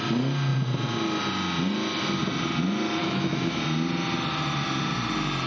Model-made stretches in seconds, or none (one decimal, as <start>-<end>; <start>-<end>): 3.0-3.6